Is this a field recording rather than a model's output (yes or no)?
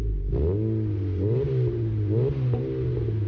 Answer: yes